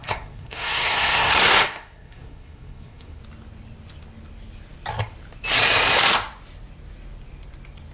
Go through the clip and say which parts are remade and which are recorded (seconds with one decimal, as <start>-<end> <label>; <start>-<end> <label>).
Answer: 0.0-3.2 remade; 3.2-7.9 recorded